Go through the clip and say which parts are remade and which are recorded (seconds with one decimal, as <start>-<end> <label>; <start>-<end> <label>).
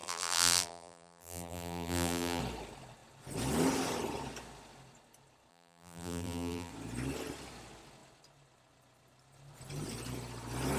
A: 0.0-2.4 remade; 2.4-5.5 recorded; 5.5-6.7 remade; 6.7-10.8 recorded